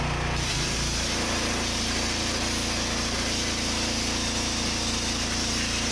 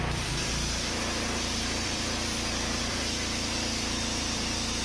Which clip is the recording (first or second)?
first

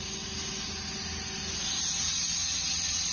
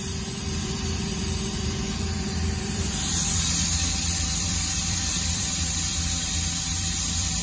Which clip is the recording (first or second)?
first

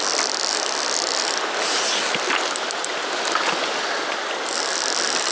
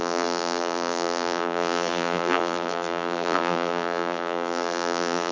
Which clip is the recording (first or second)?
first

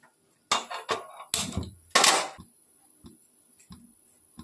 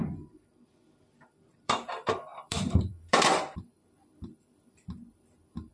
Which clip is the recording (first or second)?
first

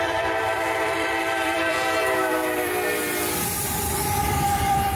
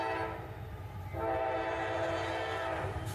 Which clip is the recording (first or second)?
second